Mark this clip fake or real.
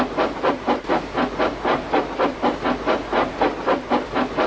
real